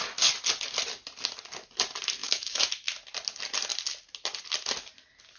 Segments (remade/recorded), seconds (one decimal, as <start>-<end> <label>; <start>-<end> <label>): 0.0-2.2 recorded; 2.2-2.7 remade; 2.7-5.4 recorded